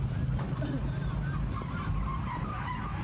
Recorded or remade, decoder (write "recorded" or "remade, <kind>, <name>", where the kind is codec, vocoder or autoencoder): recorded